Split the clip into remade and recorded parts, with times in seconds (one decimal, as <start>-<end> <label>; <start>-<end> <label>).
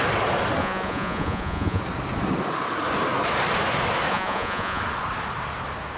0.0-0.6 recorded; 0.6-1.8 remade; 1.8-4.1 recorded; 4.1-4.8 remade; 4.8-6.0 recorded